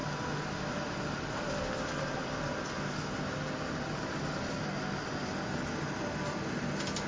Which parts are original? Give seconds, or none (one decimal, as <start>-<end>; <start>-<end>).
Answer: 0.0-7.1